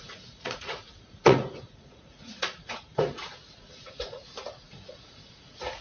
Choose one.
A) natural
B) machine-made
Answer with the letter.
B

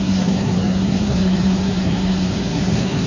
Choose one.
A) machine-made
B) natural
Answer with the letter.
A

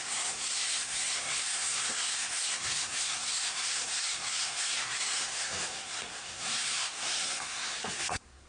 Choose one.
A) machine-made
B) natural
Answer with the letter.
A